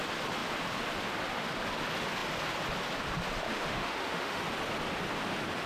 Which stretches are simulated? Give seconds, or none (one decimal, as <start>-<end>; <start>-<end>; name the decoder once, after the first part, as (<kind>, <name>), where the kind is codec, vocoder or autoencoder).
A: 3.5-4.4 (autoencoder, DAC-VAE)

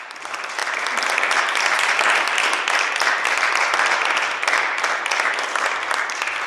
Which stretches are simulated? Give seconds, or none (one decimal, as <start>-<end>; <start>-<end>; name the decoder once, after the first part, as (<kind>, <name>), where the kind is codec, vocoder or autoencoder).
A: none

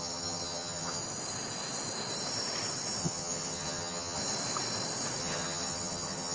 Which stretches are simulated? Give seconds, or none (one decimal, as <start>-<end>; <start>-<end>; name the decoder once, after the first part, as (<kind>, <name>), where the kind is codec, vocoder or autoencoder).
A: 0.0-1.0 (vocoder, HiFi-GAN); 3.0-4.2; 5.2-6.3

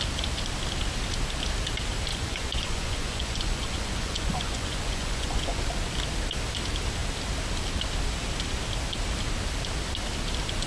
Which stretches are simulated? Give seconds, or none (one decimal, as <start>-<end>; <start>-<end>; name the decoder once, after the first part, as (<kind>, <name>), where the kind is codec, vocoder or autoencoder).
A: 2.1-5.6 (vocoder, Vocos)

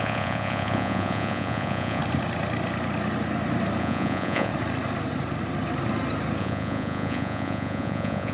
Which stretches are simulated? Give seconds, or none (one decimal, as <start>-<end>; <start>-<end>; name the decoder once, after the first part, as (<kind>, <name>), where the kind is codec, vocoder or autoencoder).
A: 0.0-2.0 (vocoder, Vocos); 3.8-4.5; 6.4-8.3

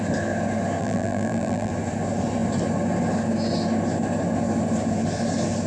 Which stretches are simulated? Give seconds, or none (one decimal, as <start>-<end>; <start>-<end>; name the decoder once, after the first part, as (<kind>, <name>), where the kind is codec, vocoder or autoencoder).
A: 0.8-1.7 (vocoder, BigVGAN v2)